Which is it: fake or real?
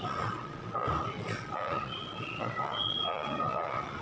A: fake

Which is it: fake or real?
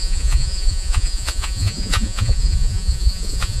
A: fake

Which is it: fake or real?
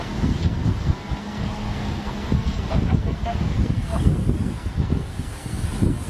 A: fake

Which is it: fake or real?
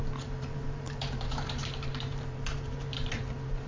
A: fake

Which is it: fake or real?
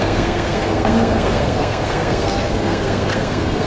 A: fake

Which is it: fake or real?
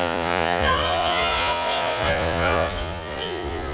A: fake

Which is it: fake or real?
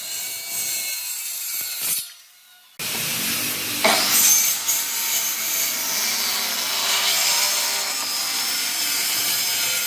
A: real